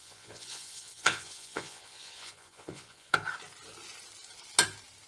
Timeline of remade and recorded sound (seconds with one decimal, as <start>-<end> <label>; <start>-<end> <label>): 0.0-3.1 remade; 3.1-5.1 recorded